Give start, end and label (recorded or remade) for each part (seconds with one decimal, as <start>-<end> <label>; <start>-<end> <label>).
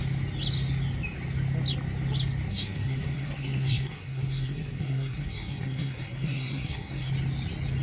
0.0-2.5 recorded; 2.5-7.1 remade; 7.1-7.8 recorded